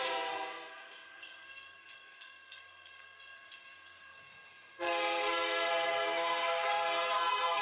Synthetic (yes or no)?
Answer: yes